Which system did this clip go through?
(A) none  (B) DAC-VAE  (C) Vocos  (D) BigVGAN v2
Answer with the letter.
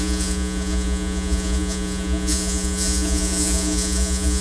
C